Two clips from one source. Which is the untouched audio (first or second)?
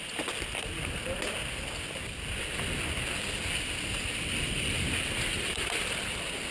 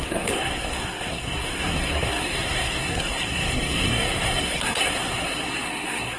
first